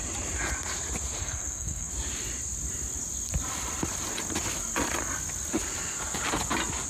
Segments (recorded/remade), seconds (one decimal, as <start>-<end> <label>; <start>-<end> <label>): 0.0-1.2 recorded; 1.2-1.9 remade; 1.9-6.9 recorded

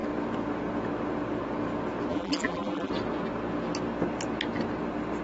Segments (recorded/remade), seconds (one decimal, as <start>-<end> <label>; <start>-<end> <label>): 0.0-2.1 recorded; 2.1-2.9 remade; 2.9-5.2 recorded

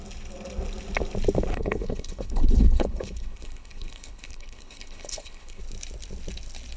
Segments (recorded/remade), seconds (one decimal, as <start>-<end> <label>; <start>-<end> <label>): 0.0-1.5 recorded; 1.5-5.6 remade; 5.6-6.8 recorded

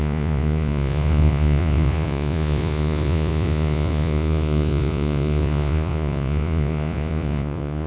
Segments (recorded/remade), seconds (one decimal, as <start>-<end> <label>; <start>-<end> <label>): 0.0-7.9 remade

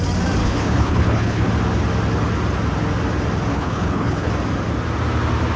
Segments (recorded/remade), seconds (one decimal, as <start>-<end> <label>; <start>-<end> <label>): 0.0-0.4 recorded; 0.4-1.5 remade; 1.5-3.5 recorded; 3.5-4.3 remade; 4.3-5.6 recorded

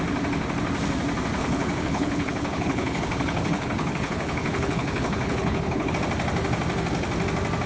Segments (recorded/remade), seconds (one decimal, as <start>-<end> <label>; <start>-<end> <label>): 0.0-1.4 recorded; 1.4-5.9 remade; 5.9-7.7 recorded

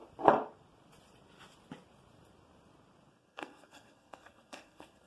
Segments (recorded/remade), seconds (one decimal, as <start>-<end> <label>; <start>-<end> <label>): 0.0-3.1 recorded; 3.1-5.1 remade

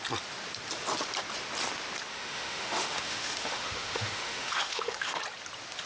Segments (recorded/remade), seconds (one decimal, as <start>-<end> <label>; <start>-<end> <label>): 0.0-2.1 recorded; 2.1-5.2 remade; 5.2-5.9 recorded